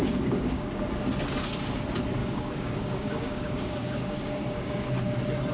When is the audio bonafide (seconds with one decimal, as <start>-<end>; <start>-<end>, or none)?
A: 0.9-2.2; 4.9-5.5